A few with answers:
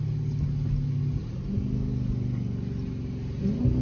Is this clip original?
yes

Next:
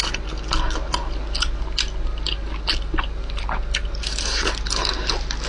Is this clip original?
yes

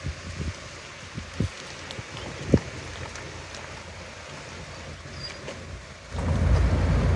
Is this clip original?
yes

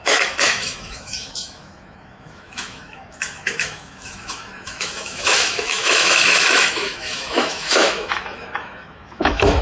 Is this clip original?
no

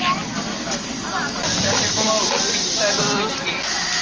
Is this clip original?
yes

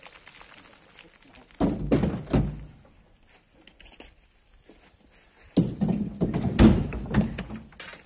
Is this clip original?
yes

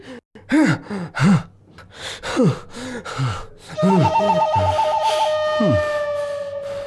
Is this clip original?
yes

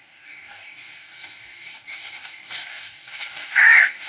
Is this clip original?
no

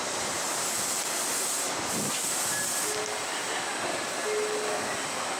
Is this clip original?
yes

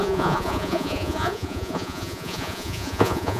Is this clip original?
no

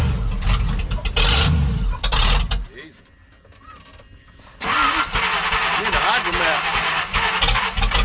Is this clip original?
yes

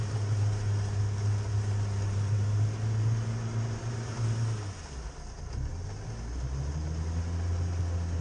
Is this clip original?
yes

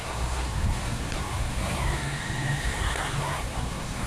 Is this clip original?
no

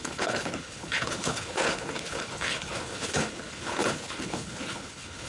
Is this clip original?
no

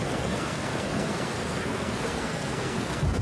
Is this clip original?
no